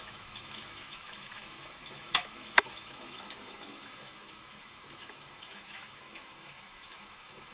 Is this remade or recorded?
remade